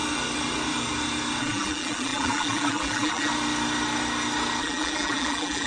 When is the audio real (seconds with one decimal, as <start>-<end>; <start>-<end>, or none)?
0.0-1.4; 3.3-4.6